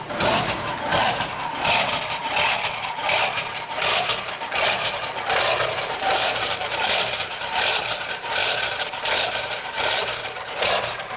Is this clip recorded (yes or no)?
no